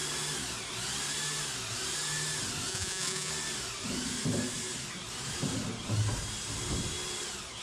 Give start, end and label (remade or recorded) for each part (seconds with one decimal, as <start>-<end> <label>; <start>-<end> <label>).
0.0-2.7 recorded; 2.7-3.3 remade; 3.3-7.6 recorded